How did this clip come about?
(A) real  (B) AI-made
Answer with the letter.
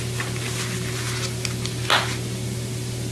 A